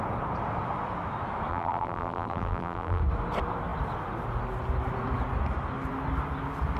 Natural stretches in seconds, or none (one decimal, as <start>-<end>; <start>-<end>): 0.0-1.5; 3.0-6.8